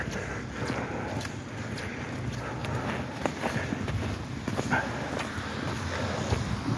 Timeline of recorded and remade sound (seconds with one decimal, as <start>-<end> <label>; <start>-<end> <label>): 0.0-6.8 recorded